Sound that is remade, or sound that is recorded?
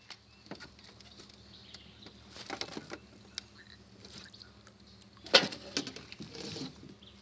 recorded